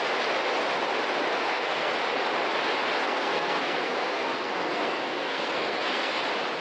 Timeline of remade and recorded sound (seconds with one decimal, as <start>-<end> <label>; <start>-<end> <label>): 0.0-1.3 recorded; 1.3-1.9 remade; 1.9-3.0 recorded; 3.0-6.1 remade; 6.1-6.6 recorded